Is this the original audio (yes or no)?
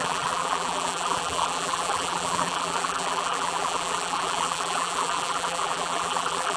no